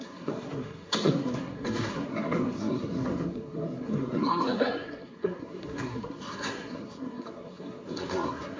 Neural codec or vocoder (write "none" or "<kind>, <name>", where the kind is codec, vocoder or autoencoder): codec, SNAC